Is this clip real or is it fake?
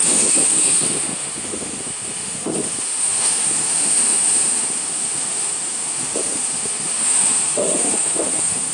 fake